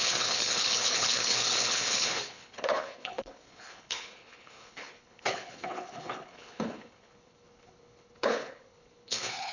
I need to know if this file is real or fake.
fake